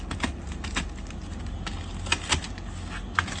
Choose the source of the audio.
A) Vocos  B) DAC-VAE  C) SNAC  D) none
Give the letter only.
D